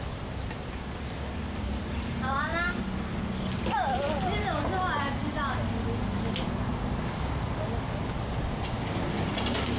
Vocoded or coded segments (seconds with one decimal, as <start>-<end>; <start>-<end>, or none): none